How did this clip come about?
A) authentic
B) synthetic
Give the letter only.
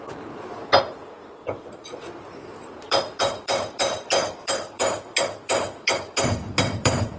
B